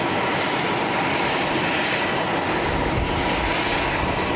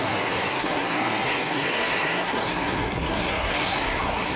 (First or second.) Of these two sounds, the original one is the first